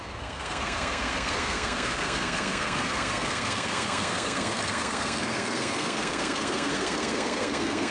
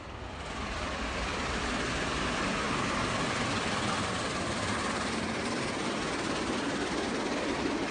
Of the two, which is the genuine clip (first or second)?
second